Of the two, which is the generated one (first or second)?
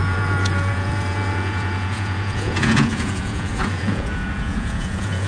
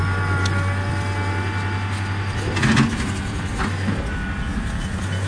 first